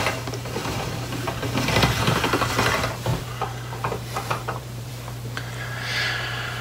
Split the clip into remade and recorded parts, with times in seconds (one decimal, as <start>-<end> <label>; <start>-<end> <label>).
0.0-0.6 recorded; 0.6-2.0 remade; 2.0-3.1 recorded; 3.1-4.9 remade; 4.9-6.6 recorded